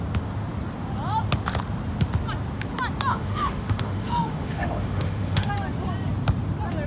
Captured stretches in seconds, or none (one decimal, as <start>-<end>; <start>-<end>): 0.0-3.1; 5.5-6.9